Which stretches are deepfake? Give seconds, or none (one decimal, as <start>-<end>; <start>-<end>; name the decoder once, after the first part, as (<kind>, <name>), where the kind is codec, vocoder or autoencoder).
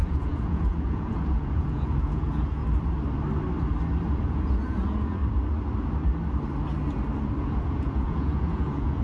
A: 0.0-2.6 (vocoder, Vocos); 4.1-5.2; 7.4-9.0